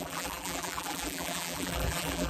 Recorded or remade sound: remade